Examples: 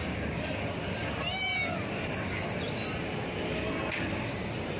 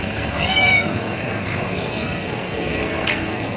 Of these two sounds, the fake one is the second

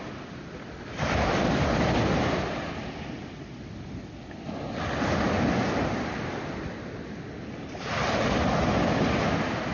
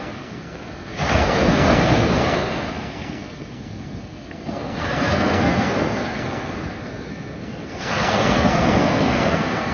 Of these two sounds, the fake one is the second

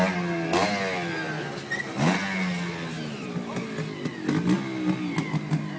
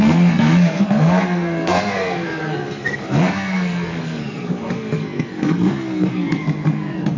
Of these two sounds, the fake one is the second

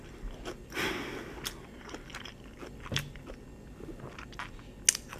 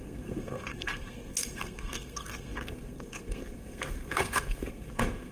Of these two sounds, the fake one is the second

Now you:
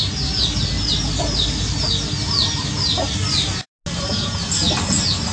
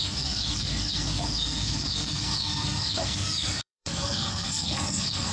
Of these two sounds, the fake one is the second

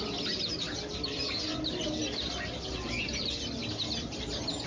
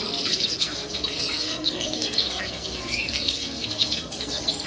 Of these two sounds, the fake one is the second